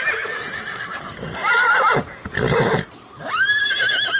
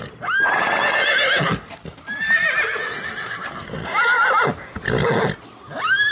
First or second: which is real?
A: second